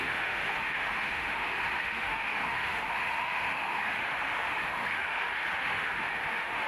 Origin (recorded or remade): remade